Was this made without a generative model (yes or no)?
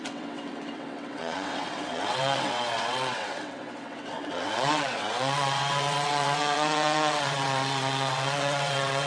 no